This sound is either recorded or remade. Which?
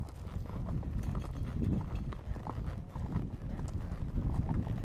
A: recorded